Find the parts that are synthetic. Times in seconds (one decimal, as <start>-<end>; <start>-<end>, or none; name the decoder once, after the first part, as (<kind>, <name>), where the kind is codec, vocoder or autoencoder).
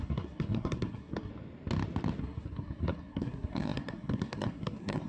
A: 0.0-1.3 (codec, SNAC); 2.2-5.1